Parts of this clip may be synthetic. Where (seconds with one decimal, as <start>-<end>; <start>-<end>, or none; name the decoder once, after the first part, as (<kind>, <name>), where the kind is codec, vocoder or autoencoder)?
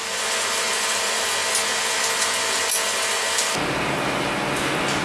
none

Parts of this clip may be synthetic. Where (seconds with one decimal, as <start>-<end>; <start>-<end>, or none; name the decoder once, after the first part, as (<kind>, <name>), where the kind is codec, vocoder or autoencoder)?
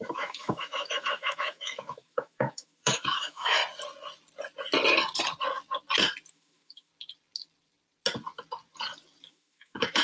0.0-3.6 (autoencoder, DAC-VAE); 6.3-6.9; 9.3-10.0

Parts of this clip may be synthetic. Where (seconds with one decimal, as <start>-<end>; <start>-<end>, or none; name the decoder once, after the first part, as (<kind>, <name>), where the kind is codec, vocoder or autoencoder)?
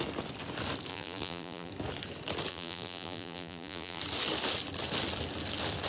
0.9-1.7 (vocoder, BigVGAN v2); 2.5-4.0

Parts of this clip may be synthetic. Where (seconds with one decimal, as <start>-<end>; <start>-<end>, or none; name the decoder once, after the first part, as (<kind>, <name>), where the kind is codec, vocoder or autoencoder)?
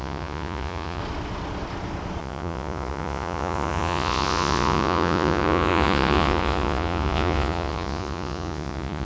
0.0-1.0 (vocoder, Vocos); 2.2-9.0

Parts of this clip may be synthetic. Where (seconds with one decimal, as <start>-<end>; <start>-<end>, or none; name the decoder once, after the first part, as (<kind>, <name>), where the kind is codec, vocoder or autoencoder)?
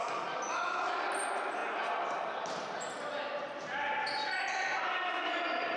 none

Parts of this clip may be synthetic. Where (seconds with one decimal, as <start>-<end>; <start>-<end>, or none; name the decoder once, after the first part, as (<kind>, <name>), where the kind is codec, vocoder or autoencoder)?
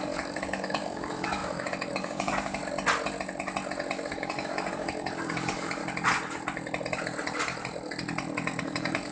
0.0-2.6 (codec, DAC); 4.1-5.8; 8.6-9.1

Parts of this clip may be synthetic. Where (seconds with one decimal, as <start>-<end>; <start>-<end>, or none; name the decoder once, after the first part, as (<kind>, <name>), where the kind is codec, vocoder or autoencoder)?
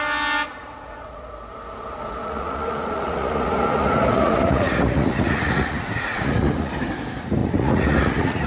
0.6-1.3 (vocoder, Vocos); 2.2-6.7; 7.4-8.5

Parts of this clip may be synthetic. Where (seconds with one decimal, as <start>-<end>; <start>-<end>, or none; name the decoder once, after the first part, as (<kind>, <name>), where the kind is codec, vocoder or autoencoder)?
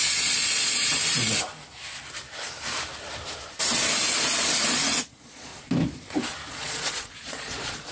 0.0-1.0 (vocoder, Vocos); 4.7-5.5; 6.5-7.9